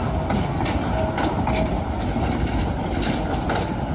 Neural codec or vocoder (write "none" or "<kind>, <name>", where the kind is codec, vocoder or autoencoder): none